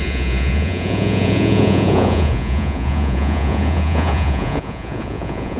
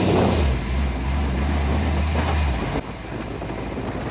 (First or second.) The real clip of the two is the second